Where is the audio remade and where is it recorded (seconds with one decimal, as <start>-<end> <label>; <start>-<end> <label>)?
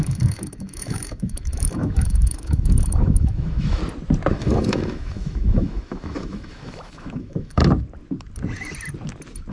0.0-3.8 remade; 3.8-4.3 recorded; 4.3-7.6 remade; 7.6-9.5 recorded